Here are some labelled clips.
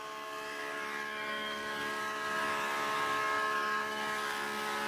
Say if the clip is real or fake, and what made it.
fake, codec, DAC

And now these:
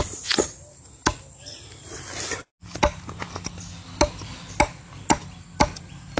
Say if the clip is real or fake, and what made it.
real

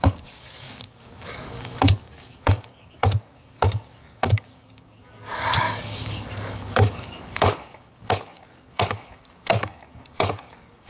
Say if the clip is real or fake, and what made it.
fake, codec, DAC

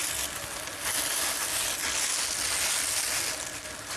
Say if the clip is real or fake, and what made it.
real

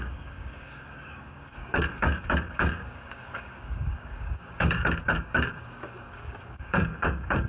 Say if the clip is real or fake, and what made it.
fake, codec, DAC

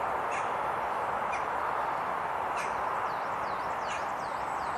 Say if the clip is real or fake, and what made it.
real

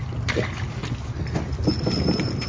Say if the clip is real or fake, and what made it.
real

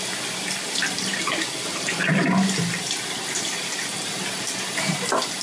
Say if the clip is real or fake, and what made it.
real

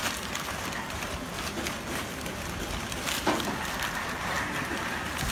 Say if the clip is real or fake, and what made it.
real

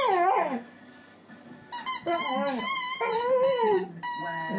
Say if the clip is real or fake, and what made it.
real